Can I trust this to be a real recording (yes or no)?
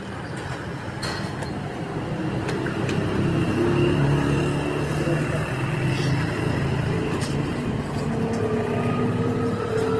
yes